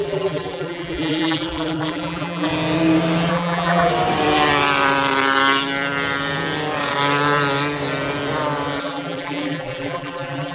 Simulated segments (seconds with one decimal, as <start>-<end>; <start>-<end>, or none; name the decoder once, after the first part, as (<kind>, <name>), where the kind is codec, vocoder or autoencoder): 0.0-2.5 (vocoder, BigVGAN v2); 3.3-3.9; 8.8-10.5